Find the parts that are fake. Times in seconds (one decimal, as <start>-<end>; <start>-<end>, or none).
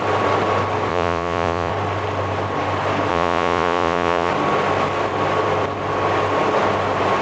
0.9-1.7; 3.1-4.3